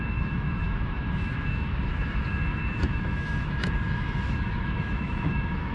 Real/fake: fake